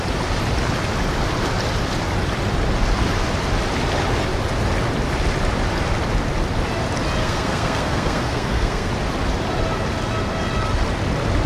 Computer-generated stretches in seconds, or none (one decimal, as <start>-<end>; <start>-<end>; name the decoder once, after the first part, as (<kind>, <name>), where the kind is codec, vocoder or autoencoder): 7.2-8.9 (codec, SNAC)